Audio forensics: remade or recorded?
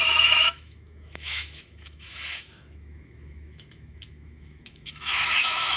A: remade